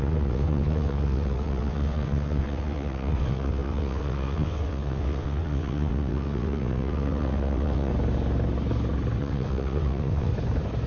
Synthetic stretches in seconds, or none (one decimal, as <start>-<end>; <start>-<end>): 0.0-7.9; 9.2-10.3